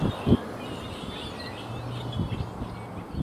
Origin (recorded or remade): recorded